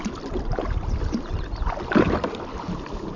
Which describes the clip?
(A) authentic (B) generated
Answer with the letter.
A